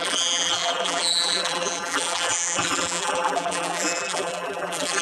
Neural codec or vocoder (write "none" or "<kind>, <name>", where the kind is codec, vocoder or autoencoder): vocoder, BigVGAN v2